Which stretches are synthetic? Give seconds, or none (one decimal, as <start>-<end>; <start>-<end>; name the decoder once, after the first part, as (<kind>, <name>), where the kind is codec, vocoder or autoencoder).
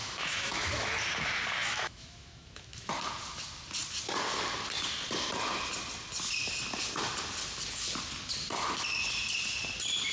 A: 0.0-0.9 (autoencoder, DAC-VAE); 1.6-2.9